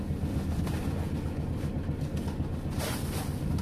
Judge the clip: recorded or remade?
recorded